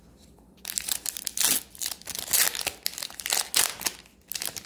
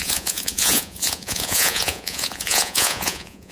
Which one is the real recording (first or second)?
first